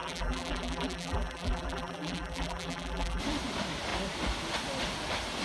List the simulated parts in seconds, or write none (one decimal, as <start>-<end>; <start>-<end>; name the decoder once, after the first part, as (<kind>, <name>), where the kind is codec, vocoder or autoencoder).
0.0-3.2 (vocoder, BigVGAN v2)